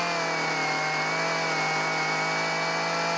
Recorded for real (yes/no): yes